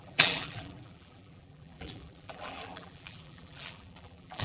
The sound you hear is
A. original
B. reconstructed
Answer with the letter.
B